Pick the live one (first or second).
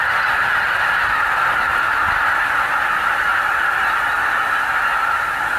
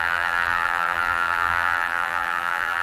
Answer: first